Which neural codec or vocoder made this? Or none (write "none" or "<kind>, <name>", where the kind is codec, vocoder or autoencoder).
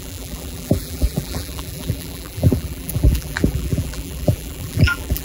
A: vocoder, BigVGAN v2